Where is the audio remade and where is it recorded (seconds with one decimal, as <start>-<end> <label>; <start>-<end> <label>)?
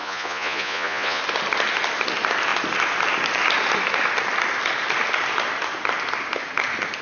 0.0-1.2 remade; 1.2-7.0 recorded